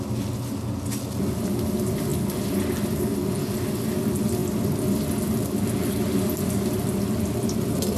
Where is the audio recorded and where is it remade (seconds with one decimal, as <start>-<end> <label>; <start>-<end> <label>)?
0.0-8.0 recorded